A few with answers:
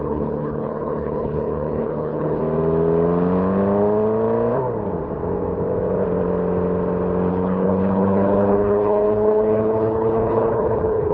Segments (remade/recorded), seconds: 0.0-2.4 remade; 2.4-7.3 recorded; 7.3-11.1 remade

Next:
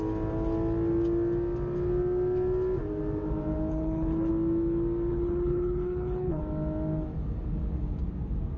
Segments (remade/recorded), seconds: 0.0-3.7 recorded; 3.7-4.3 remade; 4.3-5.1 recorded; 5.1-6.4 remade; 6.4-8.6 recorded